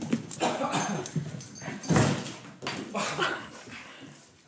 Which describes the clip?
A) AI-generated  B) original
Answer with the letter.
B